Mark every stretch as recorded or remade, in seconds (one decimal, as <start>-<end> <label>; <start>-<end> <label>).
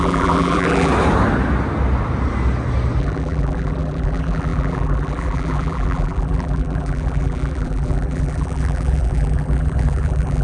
0.0-0.9 remade; 0.9-3.0 recorded; 3.0-10.4 remade